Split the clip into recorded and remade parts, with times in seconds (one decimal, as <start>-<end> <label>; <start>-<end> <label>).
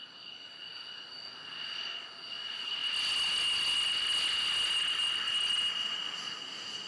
0.0-6.9 recorded